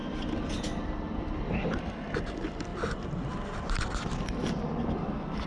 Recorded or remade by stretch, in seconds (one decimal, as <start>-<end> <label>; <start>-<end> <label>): 0.0-5.5 recorded